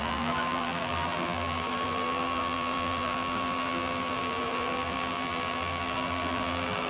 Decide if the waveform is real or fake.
fake